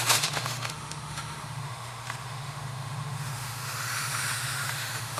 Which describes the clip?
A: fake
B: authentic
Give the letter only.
A